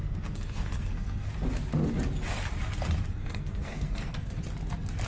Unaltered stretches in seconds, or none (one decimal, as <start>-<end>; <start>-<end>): 1.3-3.2; 4.4-5.1